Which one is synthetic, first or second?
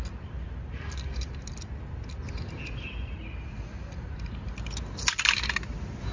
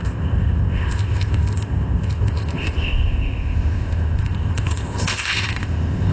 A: second